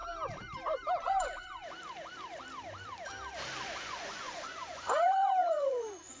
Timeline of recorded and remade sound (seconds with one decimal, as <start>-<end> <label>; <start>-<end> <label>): 0.0-1.0 recorded; 1.0-1.6 remade; 1.6-3.8 recorded; 3.8-6.2 remade